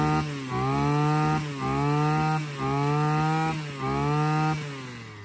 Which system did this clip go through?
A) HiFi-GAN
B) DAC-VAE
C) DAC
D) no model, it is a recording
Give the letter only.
D